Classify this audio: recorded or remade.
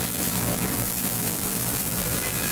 remade